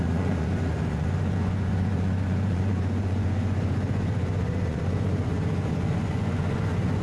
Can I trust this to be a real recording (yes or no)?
no